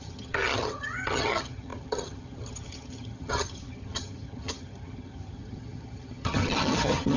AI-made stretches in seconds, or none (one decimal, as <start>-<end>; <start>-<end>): 0.0-7.2